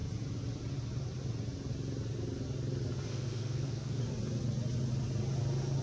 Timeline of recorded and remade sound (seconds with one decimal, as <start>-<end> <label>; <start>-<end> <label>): 0.0-3.1 recorded; 3.1-4.0 remade; 4.0-5.8 recorded